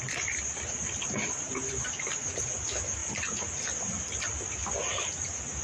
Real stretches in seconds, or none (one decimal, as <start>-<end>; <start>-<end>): 0.0-5.6